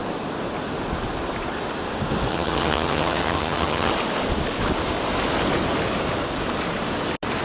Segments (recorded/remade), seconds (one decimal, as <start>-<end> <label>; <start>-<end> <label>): 0.0-2.3 recorded; 2.3-3.9 remade; 3.9-7.4 recorded